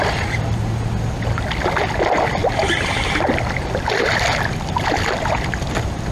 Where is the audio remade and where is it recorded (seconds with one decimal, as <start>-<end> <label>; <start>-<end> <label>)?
0.0-6.1 recorded